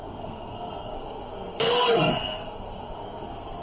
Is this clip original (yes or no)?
no